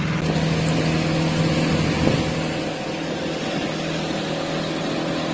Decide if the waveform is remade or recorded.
recorded